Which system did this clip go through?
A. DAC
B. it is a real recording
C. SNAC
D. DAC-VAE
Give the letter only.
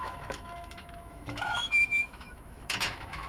D